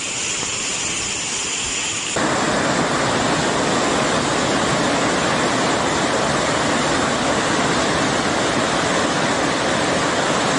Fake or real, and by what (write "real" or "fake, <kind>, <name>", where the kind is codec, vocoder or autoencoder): real